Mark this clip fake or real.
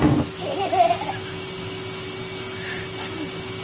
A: real